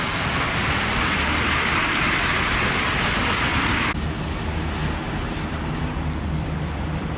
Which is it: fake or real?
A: real